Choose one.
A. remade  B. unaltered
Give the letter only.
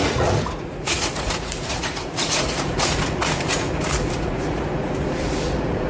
A